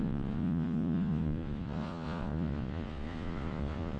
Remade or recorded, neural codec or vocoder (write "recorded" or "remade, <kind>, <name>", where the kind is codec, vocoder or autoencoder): remade, vocoder, Vocos